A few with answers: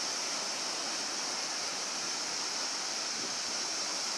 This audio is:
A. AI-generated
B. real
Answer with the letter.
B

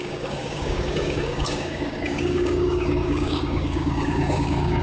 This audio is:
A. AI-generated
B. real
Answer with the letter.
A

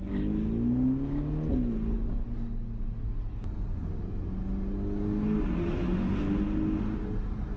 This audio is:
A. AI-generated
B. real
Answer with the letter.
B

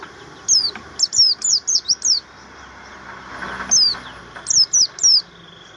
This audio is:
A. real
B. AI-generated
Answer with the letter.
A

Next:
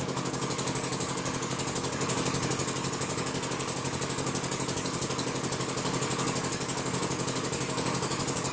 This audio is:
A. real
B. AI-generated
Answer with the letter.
B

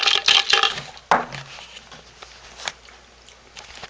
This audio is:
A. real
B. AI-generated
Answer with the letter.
A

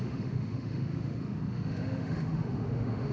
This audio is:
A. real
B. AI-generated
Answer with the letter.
B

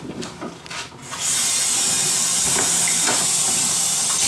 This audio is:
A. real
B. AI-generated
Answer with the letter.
A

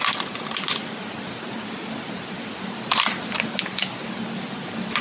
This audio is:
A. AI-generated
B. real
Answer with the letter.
B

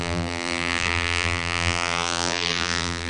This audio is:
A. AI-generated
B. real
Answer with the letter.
A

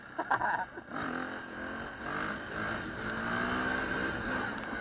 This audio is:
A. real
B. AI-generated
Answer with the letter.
A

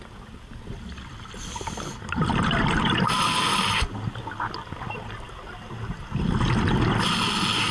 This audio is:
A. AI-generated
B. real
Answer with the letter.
B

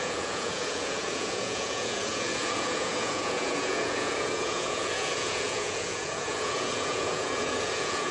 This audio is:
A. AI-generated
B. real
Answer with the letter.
A